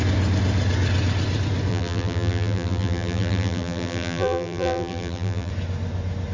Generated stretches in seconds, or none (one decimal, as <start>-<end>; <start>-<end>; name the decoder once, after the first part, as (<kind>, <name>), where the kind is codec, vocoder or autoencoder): 1.7-5.5 (vocoder, BigVGAN v2)